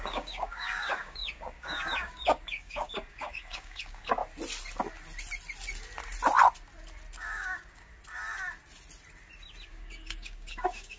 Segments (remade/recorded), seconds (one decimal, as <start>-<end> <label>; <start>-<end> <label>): 0.0-4.2 remade; 4.2-7.2 recorded; 7.2-7.9 remade; 7.9-9.7 recorded; 9.7-11.0 remade